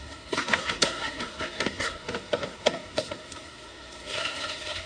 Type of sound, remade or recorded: remade